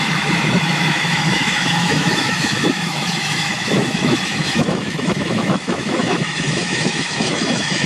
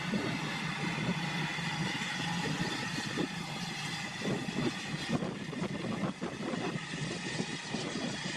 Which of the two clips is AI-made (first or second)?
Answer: first